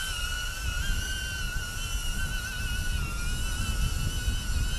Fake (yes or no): no